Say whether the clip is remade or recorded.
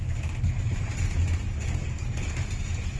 remade